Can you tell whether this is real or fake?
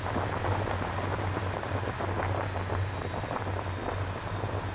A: real